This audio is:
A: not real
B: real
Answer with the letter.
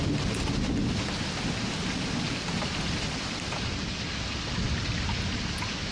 B